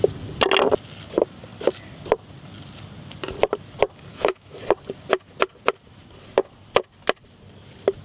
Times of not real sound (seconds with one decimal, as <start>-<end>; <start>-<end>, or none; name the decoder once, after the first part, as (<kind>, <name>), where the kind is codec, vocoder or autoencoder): 4.1-4.6 (autoencoder, DAC-VAE)